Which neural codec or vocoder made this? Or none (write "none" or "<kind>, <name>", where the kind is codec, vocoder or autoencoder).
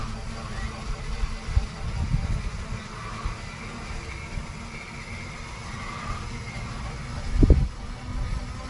none